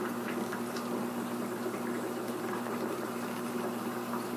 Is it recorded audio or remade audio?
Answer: remade